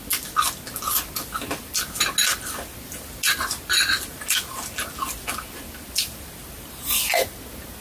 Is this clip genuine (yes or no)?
yes